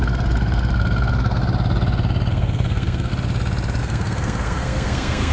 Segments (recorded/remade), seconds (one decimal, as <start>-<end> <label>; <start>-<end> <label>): 0.0-1.4 remade; 1.4-2.3 recorded; 2.3-3.1 remade; 3.1-3.8 recorded; 3.8-5.3 remade